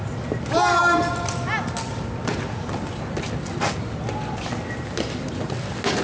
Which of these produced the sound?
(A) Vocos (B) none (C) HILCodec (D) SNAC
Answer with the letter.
B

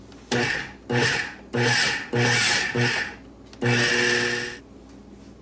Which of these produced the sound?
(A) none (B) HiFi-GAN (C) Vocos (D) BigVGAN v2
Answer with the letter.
A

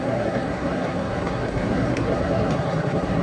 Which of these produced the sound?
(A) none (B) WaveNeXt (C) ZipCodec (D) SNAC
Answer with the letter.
D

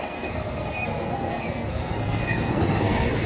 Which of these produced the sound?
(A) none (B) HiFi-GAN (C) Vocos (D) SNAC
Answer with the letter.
D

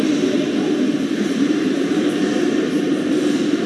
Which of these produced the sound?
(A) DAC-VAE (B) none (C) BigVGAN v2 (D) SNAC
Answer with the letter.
C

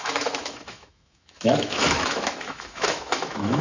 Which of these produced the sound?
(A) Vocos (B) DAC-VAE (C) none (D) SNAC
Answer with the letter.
B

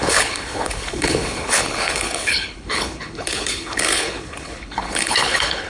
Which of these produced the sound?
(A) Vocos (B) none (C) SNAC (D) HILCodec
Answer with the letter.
D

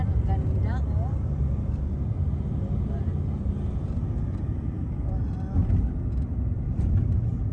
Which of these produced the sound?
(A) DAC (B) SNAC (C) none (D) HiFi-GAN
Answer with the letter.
C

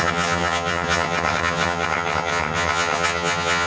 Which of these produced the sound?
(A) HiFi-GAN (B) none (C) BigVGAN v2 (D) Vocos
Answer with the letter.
A